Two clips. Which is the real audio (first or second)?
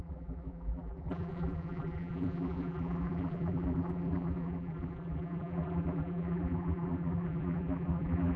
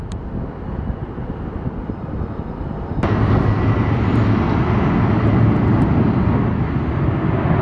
second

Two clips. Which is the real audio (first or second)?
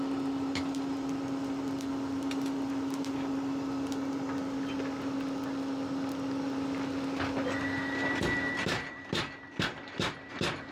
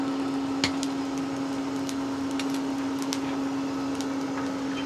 second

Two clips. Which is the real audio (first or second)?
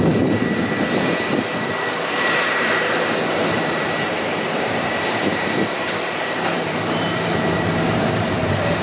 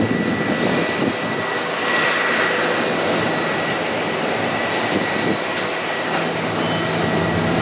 second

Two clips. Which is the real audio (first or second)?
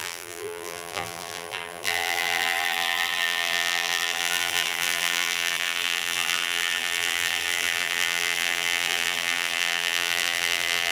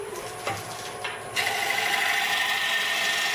second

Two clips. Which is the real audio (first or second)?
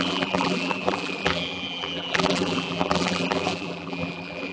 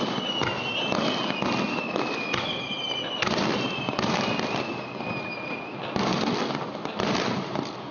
second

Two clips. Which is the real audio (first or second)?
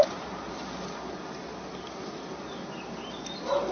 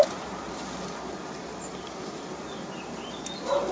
first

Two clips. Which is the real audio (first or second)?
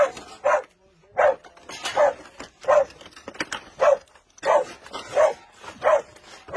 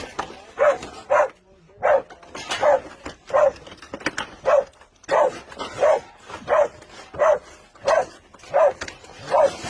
second